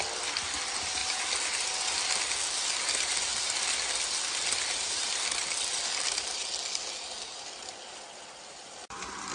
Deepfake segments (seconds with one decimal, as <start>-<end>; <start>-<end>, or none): none